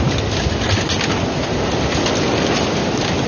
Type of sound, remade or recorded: recorded